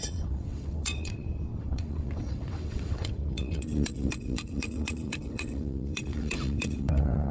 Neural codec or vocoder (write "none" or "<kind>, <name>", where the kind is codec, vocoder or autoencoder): vocoder, WaveNeXt